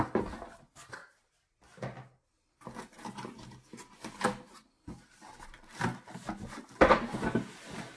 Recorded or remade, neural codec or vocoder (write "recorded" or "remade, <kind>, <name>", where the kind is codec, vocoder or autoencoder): recorded